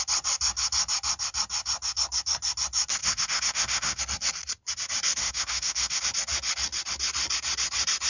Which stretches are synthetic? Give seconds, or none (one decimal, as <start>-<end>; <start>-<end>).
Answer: 3.0-4.0; 5.2-6.0